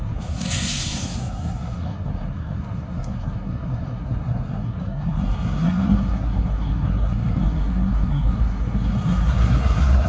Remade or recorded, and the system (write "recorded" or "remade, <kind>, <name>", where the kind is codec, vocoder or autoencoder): remade, codec, SNAC